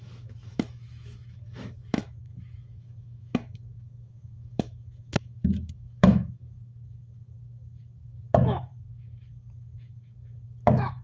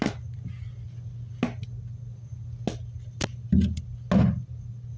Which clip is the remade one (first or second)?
first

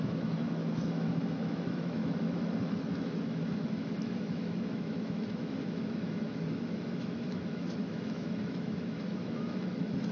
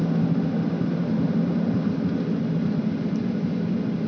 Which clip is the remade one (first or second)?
first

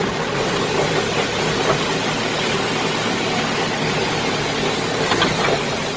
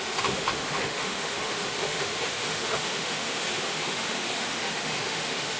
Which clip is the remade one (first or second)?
second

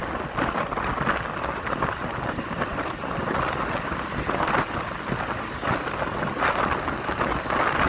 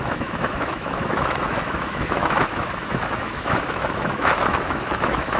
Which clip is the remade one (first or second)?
second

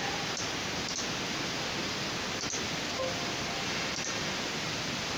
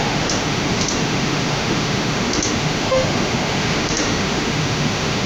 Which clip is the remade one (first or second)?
second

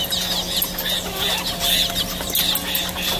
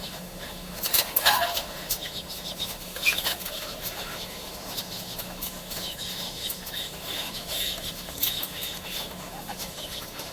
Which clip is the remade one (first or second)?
second